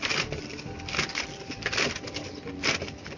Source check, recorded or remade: remade